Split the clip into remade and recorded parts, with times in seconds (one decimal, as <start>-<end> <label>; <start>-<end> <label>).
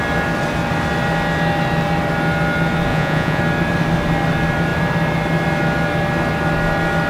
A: 0.0-2.9 recorded; 2.9-3.4 remade; 3.4-7.1 recorded